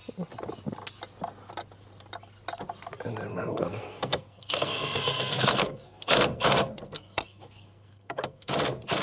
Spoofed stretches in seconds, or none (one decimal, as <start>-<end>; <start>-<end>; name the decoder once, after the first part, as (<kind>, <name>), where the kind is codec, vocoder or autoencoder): 3.3-8.5 (codec, SNAC)